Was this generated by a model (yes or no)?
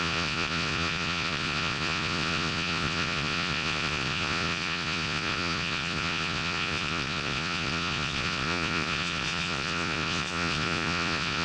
yes